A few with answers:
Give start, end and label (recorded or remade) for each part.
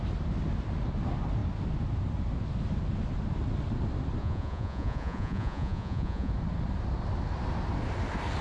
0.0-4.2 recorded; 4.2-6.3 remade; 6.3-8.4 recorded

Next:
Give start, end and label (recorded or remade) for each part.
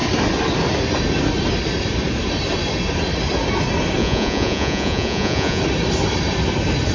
0.0-4.0 recorded; 4.0-5.6 remade; 5.6-6.9 recorded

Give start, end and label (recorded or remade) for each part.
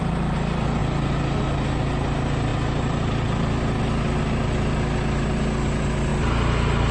0.0-6.9 recorded